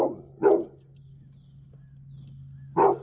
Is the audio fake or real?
real